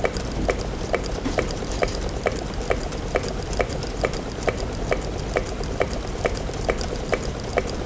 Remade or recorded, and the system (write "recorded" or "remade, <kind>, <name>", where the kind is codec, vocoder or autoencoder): remade, vocoder, BigVGAN v2